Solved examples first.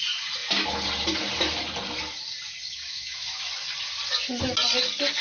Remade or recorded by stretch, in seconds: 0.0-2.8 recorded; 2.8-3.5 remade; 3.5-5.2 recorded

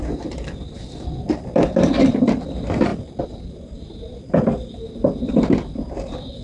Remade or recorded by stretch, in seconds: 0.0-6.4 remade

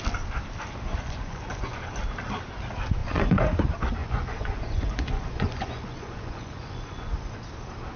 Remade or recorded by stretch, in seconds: 0.0-0.9 recorded; 0.9-1.8 remade; 1.8-3.0 recorded; 3.0-3.6 remade; 3.6-4.0 recorded; 4.0-7.4 remade; 7.4-8.0 recorded

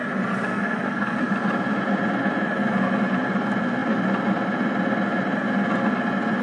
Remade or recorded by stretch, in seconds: 0.0-0.5 recorded; 0.5-1.2 remade; 1.2-6.4 recorded

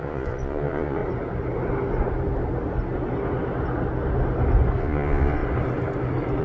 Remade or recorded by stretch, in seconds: 0.0-1.0 remade; 1.0-4.8 recorded; 4.8-5.4 remade; 5.4-6.4 recorded